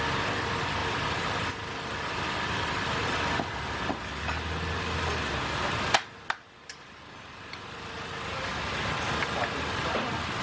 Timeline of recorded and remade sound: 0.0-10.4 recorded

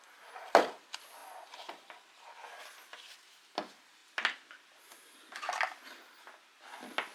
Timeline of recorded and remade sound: 0.0-7.1 recorded

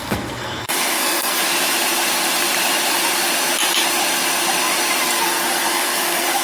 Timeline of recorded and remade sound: 0.0-1.4 remade; 1.4-5.2 recorded; 5.2-6.4 remade

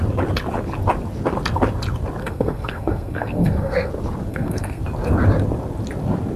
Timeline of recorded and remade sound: 0.0-2.2 recorded; 2.2-3.9 remade; 3.9-4.3 recorded; 4.3-4.8 remade; 4.8-6.4 recorded

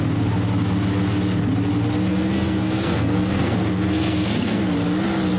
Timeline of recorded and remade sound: 0.0-2.1 recorded; 2.1-4.6 remade; 4.6-5.4 recorded